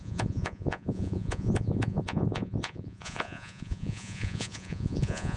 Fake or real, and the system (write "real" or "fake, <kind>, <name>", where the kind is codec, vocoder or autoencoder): fake, vocoder, Vocos